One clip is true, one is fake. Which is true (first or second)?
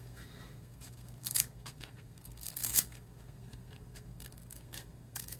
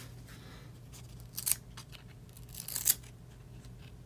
second